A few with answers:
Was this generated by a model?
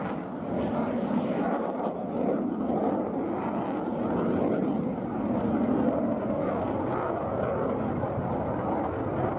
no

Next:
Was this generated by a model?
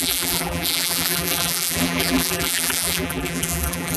yes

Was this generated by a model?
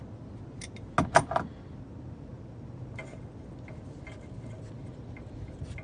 no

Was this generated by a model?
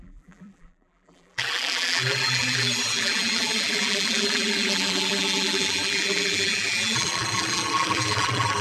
yes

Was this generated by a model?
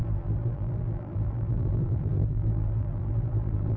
yes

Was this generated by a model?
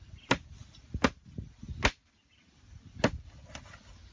no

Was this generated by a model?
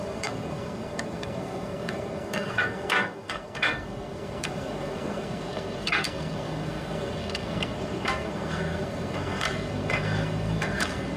yes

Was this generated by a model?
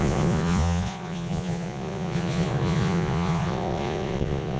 yes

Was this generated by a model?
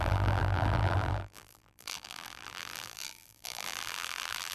yes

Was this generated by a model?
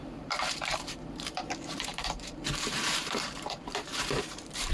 yes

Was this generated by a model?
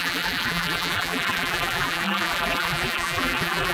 yes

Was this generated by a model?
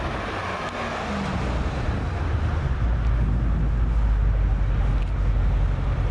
no